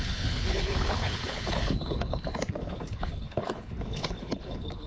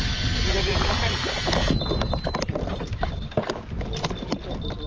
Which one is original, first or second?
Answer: second